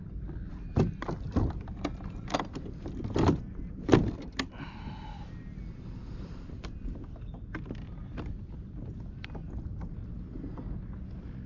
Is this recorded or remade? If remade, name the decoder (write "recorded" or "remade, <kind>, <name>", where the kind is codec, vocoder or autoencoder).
recorded